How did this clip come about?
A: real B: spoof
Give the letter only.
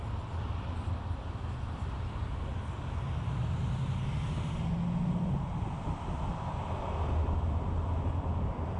A